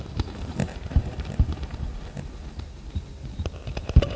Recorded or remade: recorded